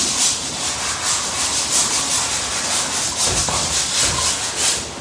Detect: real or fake real